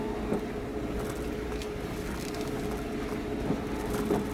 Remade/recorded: recorded